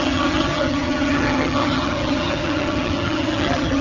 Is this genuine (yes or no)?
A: no